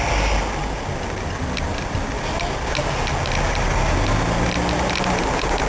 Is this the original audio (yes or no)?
yes